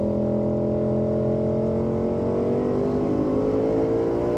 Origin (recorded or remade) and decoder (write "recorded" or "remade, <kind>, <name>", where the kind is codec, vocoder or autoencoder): recorded